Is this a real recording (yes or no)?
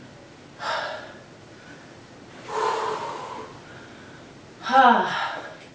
yes